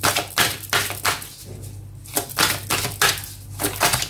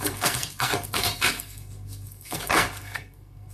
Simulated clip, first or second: second